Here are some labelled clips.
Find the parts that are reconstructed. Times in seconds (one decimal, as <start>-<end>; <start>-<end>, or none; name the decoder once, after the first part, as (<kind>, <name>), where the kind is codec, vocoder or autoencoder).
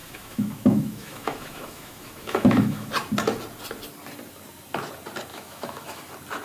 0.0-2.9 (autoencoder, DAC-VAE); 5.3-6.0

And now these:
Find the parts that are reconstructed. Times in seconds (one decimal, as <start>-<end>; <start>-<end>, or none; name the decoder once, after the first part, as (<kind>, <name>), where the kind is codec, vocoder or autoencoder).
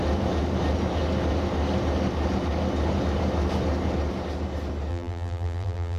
4.9-6.0 (vocoder, BigVGAN v2)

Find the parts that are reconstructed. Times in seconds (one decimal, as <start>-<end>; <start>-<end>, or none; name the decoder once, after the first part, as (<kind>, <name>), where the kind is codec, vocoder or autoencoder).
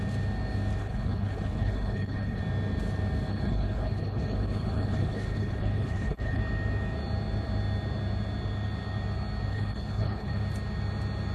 0.8-2.4 (codec, HILCodec); 3.3-6.4; 9.5-10.4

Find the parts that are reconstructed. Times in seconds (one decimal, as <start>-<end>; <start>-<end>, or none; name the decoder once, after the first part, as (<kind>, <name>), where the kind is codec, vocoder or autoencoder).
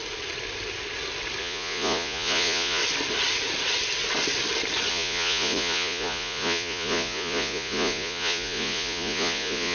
1.4-2.8 (vocoder, Vocos); 4.9-9.7